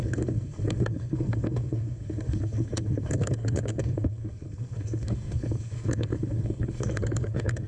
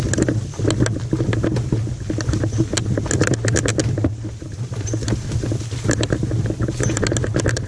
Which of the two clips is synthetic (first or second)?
first